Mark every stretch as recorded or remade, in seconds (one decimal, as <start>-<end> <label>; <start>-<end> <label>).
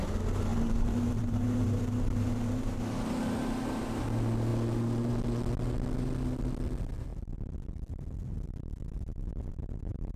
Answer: 0.0-0.5 recorded; 0.5-2.8 remade; 2.8-10.2 recorded